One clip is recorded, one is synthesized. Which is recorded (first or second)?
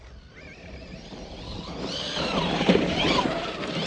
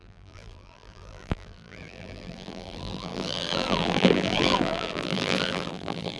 first